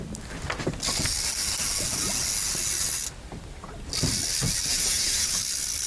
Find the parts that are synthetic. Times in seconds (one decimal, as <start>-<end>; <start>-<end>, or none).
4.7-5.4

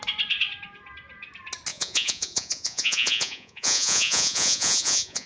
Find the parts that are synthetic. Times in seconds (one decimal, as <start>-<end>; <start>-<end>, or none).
1.7-5.3

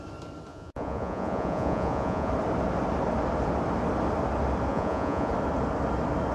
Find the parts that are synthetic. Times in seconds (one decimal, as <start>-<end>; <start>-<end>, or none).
0.5-2.3; 4.7-5.3

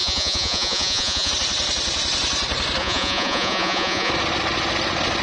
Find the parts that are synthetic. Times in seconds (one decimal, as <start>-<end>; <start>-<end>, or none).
0.0-1.3; 2.8-4.1

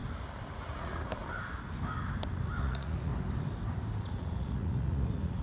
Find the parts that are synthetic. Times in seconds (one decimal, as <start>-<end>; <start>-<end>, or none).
0.5-1.2; 2.6-3.1; 4.0-5.4